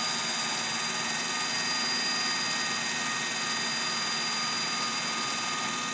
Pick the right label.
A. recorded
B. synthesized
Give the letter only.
A